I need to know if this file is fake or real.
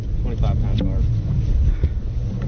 real